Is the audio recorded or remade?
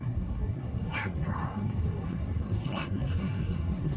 remade